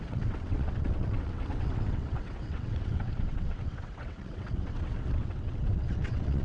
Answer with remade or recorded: remade